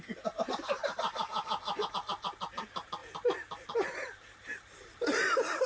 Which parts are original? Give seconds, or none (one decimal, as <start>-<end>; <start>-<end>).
0.8-2.6; 3.0-4.8